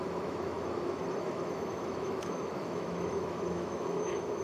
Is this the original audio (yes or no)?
no